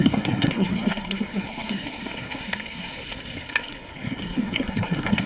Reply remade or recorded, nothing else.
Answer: remade